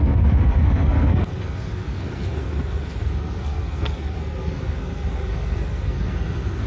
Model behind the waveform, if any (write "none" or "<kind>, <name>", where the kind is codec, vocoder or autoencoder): codec, SNAC